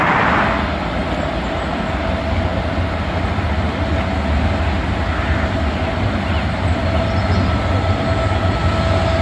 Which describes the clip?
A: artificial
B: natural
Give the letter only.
B